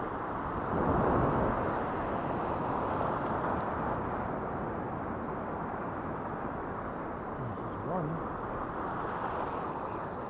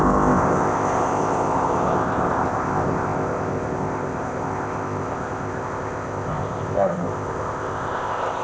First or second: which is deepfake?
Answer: second